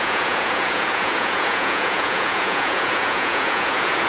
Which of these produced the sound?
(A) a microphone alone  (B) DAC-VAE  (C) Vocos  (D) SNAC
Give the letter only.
C